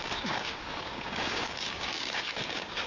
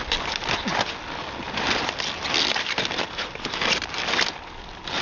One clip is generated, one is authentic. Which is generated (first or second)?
first